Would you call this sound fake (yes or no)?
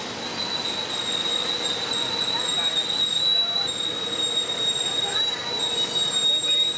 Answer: no